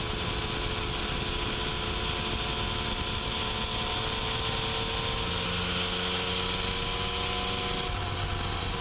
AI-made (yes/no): no